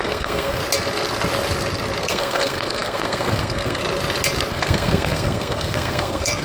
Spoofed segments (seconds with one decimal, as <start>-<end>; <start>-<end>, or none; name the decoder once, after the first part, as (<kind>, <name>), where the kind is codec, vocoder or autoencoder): 0.0-0.6 (codec, SNAC); 2.0-3.8; 4.5-6.4